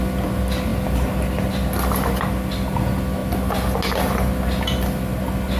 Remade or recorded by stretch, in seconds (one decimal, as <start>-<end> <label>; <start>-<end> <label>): 0.0-5.6 recorded